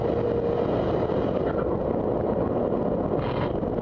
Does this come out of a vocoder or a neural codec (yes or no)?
no